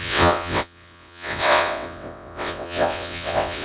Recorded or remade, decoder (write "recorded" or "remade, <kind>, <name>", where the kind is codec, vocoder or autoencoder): remade, vocoder, WaveNeXt